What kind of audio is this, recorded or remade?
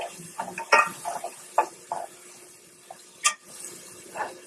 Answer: recorded